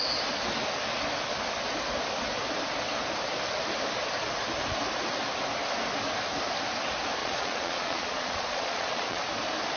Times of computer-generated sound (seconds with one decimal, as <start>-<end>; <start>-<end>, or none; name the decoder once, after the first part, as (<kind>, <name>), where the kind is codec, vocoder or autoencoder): 7.2-9.2 (vocoder, Vocos)